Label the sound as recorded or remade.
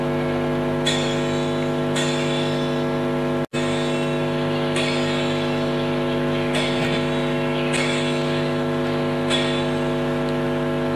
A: recorded